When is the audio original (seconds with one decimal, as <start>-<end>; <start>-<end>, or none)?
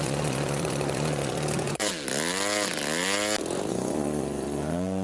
1.9-3.7